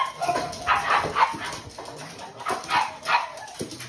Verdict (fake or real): real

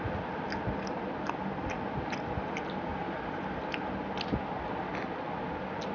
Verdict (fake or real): real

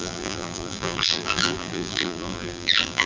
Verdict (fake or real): fake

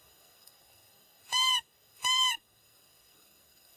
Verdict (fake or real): fake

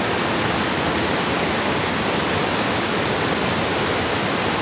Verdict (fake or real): real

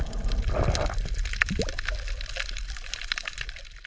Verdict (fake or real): real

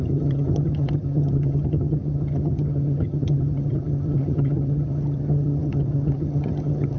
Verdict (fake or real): fake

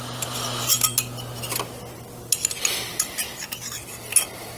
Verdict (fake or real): real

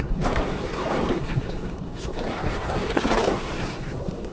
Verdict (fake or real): fake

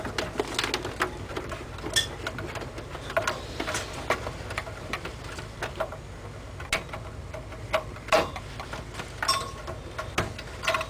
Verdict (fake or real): real